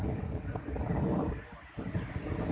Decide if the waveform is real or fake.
real